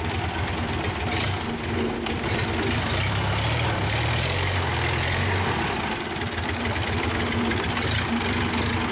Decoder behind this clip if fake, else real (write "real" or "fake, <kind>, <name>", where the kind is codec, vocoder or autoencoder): real